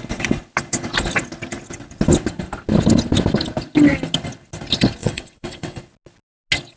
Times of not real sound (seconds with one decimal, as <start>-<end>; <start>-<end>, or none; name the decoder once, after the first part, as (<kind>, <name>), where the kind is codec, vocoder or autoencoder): 5.0-5.8 (vocoder, WaveNeXt)